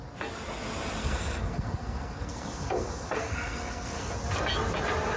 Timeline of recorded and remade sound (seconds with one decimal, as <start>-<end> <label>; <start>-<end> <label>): 0.0-1.0 recorded; 1.0-4.1 remade; 4.1-5.2 recorded